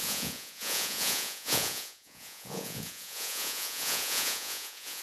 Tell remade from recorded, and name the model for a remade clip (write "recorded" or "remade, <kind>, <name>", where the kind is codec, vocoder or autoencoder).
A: remade, vocoder, Vocos